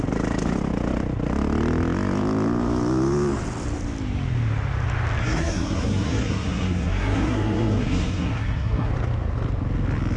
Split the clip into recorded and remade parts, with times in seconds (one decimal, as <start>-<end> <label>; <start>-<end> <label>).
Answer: 0.0-5.2 recorded; 5.2-8.9 remade; 8.9-10.2 recorded